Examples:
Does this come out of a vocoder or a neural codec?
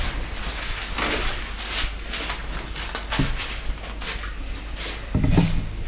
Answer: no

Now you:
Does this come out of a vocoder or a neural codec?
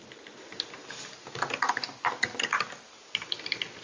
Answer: no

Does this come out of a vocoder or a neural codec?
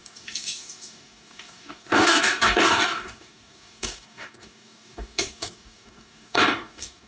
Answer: yes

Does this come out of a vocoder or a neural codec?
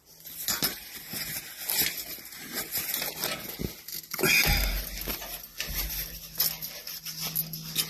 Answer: no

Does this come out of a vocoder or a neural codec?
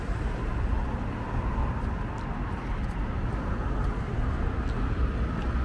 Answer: no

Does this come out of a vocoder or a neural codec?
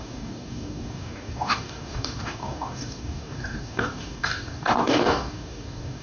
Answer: yes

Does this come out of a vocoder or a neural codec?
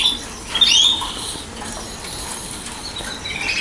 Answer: no